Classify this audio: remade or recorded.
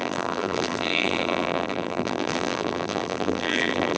remade